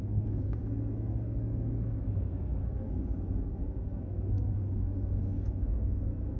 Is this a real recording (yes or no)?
no